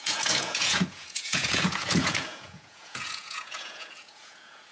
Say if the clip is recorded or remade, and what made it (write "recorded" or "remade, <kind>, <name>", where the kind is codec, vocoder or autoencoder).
remade, vocoder, Vocos